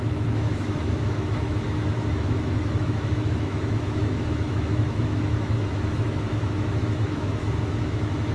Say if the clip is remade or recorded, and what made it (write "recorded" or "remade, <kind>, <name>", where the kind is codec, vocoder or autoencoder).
remade, autoencoder, DAC-VAE